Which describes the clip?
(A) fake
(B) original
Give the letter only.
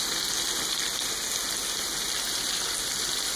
B